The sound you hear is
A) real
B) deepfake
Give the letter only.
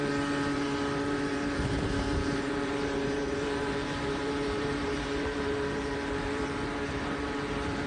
B